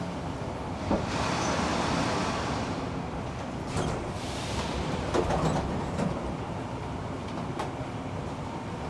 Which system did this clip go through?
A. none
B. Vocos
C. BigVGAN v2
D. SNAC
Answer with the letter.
C